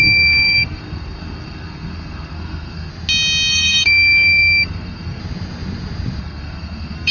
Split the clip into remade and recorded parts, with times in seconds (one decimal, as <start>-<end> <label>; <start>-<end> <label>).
0.0-2.9 remade; 2.9-3.5 recorded; 3.5-5.2 remade; 5.2-6.2 recorded; 6.2-7.1 remade